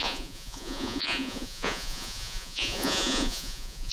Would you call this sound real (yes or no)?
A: no